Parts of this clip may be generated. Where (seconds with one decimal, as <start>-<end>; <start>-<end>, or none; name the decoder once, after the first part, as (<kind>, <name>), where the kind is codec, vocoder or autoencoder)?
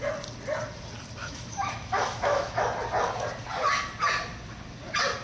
1.2-2.6 (autoencoder, DAC-VAE)